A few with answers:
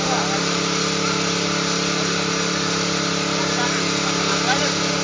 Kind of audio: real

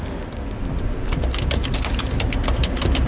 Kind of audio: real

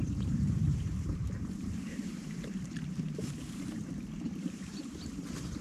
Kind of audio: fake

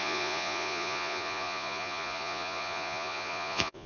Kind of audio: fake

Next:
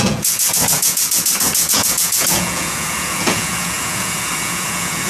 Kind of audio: fake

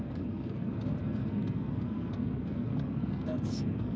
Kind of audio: fake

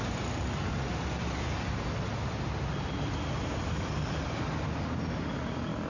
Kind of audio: real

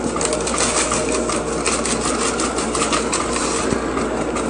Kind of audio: real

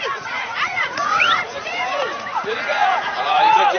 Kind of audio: fake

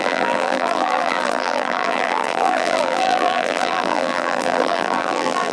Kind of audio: fake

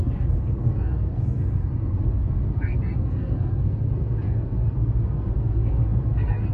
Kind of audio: fake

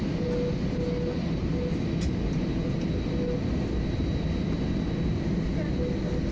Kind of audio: real